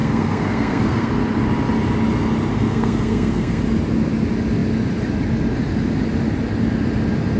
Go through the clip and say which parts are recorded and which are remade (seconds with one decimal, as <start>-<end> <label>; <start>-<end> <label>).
0.0-1.1 remade; 1.1-2.5 recorded; 2.5-3.6 remade; 3.6-7.4 recorded